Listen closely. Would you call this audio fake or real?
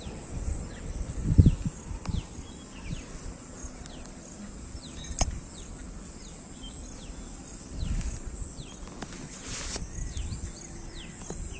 real